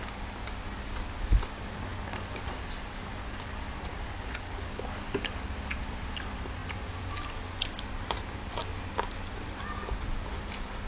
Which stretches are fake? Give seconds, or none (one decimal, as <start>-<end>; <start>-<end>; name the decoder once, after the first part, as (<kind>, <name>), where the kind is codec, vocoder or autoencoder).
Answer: 3.2-5.3 (codec, DAC)

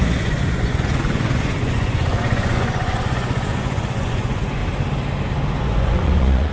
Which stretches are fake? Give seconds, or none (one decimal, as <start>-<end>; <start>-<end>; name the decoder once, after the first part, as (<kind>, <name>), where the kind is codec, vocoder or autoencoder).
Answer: 0.0-4.6 (vocoder, Vocos); 5.6-6.5